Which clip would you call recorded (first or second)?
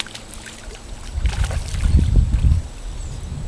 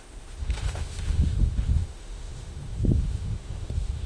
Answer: first